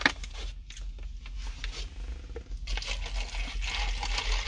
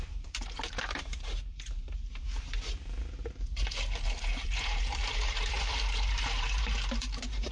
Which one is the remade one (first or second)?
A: second